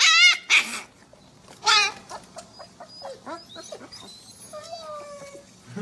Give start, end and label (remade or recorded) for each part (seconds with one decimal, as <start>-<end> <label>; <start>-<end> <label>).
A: 0.0-1.1 recorded; 1.1-2.7 remade; 2.7-5.8 recorded